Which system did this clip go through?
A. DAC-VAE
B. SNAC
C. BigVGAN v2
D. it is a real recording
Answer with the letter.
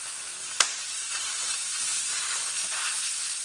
D